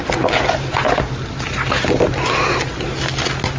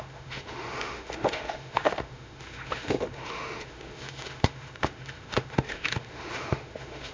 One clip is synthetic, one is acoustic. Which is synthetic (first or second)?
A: second